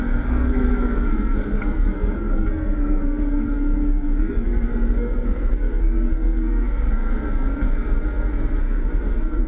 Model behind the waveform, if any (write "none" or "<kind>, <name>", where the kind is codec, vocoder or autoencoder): codec, SNAC